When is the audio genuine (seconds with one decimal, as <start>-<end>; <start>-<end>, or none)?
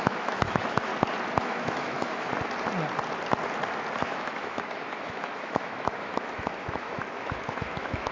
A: 0.9-1.4; 2.3-4.0